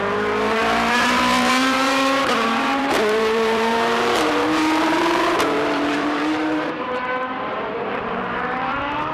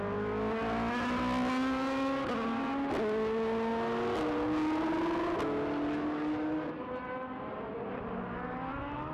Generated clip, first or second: first